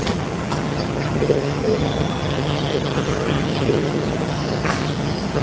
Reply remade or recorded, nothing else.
remade